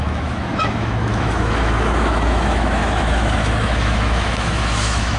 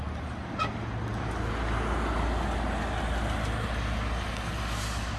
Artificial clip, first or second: first